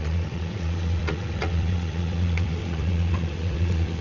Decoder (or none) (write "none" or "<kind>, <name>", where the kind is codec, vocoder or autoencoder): vocoder, WaveNeXt